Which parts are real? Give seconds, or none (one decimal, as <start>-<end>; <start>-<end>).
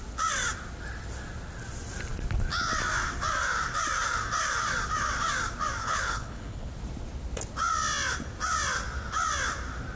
0.0-5.8; 6.7-10.0